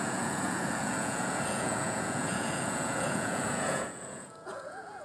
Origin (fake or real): fake